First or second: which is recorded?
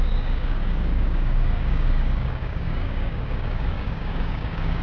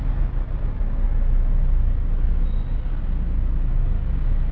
second